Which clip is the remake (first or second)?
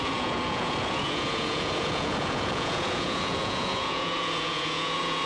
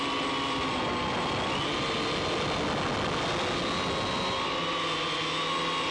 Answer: first